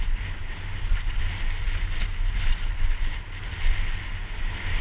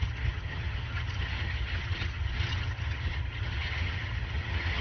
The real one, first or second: first